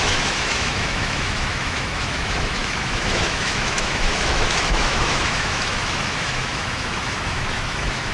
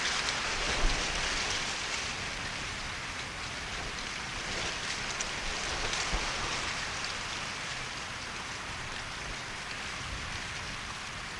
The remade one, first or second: first